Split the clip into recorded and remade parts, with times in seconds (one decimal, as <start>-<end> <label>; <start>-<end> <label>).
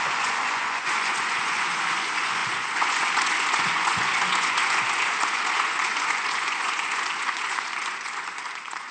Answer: 0.0-8.9 remade